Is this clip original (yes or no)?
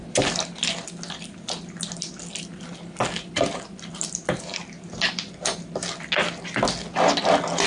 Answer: yes